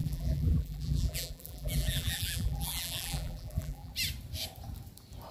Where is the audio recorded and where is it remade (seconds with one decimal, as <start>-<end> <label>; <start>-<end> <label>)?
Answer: 0.0-3.9 remade; 3.9-5.3 recorded